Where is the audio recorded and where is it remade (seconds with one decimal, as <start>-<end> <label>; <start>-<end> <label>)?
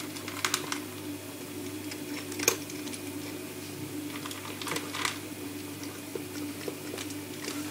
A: 0.0-7.7 recorded